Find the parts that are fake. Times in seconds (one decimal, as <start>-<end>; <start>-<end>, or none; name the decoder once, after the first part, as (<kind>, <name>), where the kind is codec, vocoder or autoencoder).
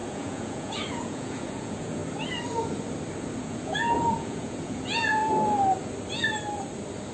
0.0-2.0 (vocoder, Vocos); 3.4-5.2